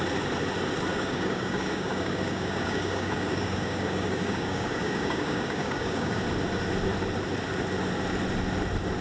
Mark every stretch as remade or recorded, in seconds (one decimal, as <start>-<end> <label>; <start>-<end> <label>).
0.0-0.9 recorded; 0.9-6.2 remade; 6.2-9.0 recorded